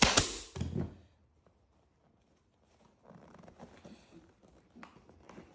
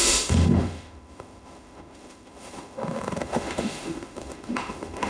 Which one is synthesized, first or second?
second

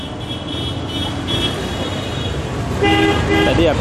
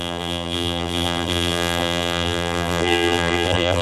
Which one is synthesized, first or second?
second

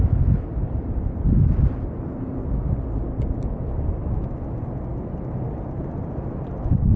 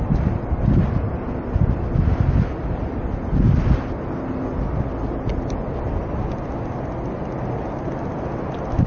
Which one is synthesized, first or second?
first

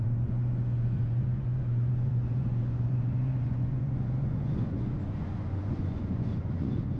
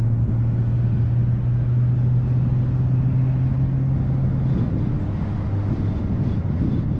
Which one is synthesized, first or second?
first